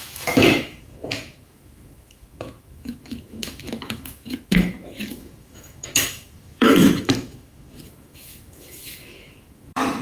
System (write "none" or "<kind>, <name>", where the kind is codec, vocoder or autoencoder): autoencoder, DAC-VAE